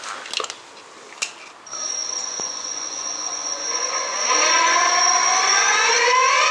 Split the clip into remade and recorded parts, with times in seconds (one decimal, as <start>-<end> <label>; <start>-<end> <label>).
0.0-2.0 recorded; 2.0-5.9 remade; 5.9-6.5 recorded